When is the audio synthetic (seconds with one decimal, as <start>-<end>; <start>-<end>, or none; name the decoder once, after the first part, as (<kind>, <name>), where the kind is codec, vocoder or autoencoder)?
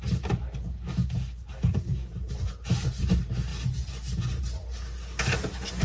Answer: none